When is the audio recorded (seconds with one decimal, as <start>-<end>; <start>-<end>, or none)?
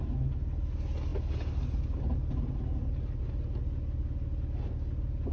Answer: 0.0-5.3